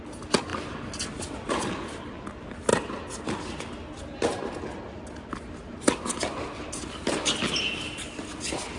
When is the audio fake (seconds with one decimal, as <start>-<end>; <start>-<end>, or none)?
none

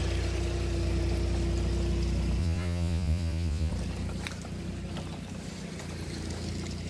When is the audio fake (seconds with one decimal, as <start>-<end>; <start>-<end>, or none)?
2.4-3.7

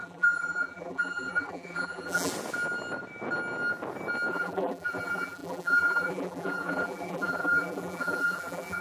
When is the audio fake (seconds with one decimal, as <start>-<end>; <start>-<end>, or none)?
0.0-2.3; 4.3-8.8

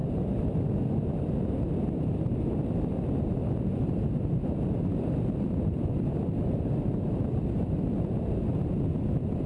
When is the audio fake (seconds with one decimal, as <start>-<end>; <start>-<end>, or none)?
none

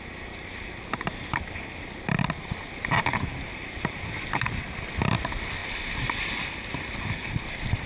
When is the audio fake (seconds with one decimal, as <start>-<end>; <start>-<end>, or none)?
3.5-4.2; 5.6-7.4

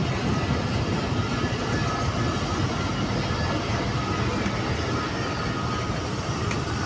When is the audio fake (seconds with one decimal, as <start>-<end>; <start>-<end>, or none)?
1.3-1.8; 5.9-6.9